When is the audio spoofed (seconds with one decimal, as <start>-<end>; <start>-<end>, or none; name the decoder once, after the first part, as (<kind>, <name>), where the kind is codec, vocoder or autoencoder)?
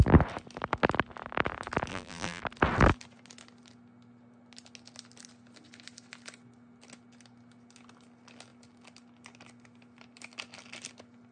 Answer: 1.9-2.4 (vocoder, BigVGAN v2)